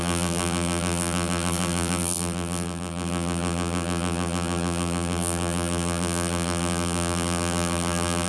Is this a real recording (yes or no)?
no